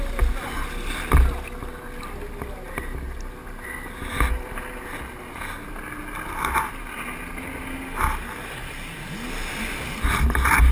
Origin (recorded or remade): recorded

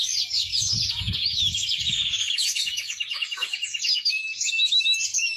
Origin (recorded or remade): remade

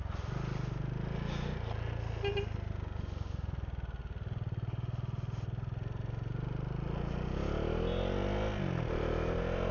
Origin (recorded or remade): recorded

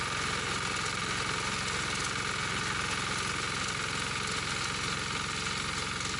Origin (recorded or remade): recorded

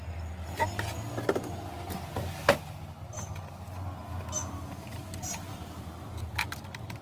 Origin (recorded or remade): recorded